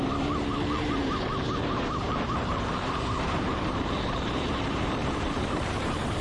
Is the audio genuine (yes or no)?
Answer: no